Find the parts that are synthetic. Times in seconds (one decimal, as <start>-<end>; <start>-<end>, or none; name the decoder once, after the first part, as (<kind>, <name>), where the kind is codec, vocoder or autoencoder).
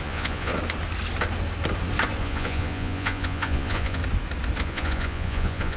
0.0-0.5 (vocoder, Vocos); 2.2-4.0; 4.6-5.8